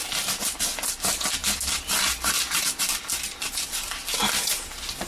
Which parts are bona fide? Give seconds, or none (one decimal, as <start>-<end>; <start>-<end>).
0.0-5.1